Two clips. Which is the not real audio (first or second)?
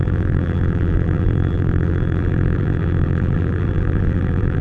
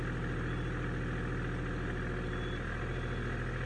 first